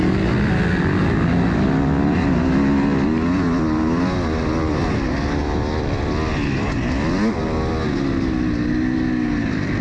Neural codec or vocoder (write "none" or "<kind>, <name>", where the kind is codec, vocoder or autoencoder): none